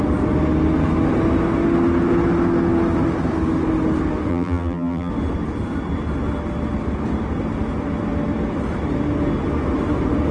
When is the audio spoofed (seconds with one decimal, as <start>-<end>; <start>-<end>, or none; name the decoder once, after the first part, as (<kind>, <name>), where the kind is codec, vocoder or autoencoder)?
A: 4.3-5.1 (vocoder, BigVGAN v2)